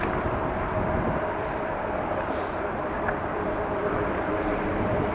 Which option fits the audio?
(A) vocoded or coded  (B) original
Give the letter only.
A